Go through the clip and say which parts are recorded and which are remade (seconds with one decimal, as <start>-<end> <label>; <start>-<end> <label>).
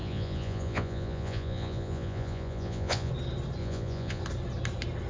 0.0-3.1 remade; 3.1-3.6 recorded; 3.6-4.2 remade; 4.2-5.1 recorded